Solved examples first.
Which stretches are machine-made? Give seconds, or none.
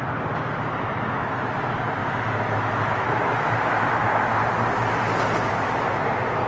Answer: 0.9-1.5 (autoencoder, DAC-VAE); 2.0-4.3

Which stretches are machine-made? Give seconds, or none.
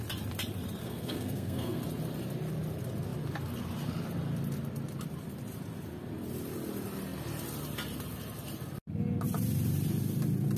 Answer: 0.8-1.8 (codec, SNAC)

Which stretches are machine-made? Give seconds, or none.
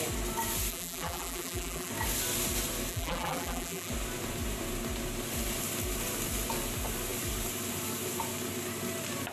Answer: 0.7-1.9 (vocoder, BigVGAN v2); 2.9-3.9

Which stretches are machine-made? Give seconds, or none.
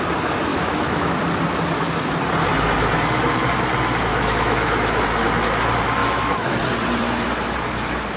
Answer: 0.5-1.2 (autoencoder, DAC-VAE); 4.1-5.0; 6.0-6.6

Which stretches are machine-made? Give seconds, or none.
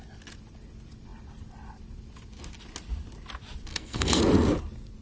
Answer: 3.7-4.2 (codec, SNAC)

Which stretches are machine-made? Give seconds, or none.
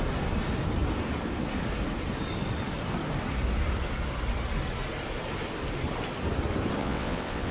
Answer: 6.8-7.5 (vocoder, WaveNeXt)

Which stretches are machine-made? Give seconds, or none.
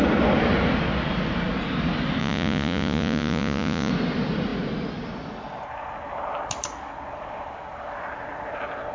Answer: 2.2-3.9 (vocoder, Vocos)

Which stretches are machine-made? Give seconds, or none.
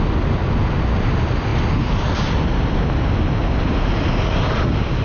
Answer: none